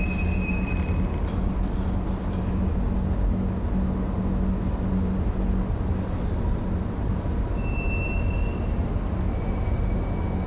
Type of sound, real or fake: real